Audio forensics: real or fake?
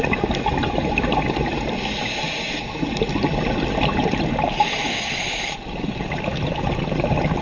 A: real